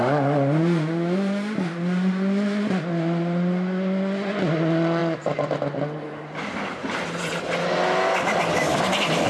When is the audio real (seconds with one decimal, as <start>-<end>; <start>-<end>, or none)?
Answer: 0.0-9.3